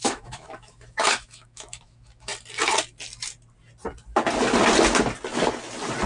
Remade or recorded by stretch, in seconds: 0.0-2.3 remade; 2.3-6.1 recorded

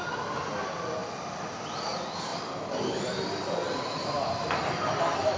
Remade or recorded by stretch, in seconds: 0.0-5.4 recorded

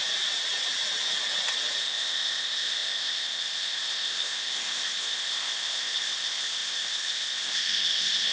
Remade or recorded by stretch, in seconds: 0.0-1.8 recorded; 1.8-8.3 remade

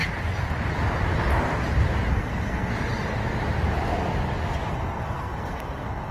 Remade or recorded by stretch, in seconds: 0.0-2.1 recorded; 2.1-2.7 remade; 2.7-4.7 recorded; 4.7-6.1 remade

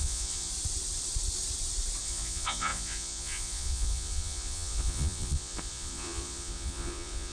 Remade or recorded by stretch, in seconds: 0.0-0.5 remade; 0.5-2.0 recorded; 2.0-7.3 remade